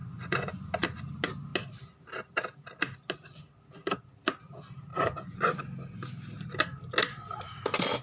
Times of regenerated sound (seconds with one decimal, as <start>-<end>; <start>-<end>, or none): 0.0-0.7; 4.9-5.6